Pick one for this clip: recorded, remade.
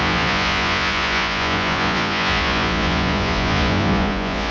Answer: remade